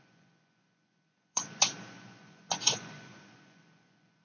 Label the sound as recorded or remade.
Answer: remade